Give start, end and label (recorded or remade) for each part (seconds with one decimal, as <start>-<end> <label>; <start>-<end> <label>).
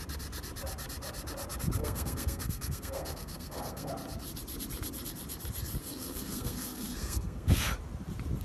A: 0.0-1.8 recorded; 1.8-3.9 remade; 3.9-5.8 recorded; 5.8-7.6 remade; 7.6-8.4 recorded